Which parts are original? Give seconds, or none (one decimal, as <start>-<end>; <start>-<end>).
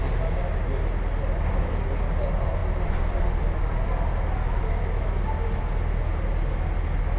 0.0-7.2